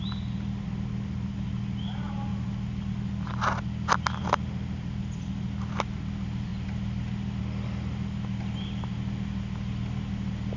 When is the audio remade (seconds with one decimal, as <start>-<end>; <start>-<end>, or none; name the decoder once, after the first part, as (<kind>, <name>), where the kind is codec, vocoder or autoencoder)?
none